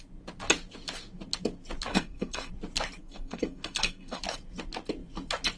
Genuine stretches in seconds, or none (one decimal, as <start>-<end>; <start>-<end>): 0.0-1.9; 2.5-3.0; 4.2-5.6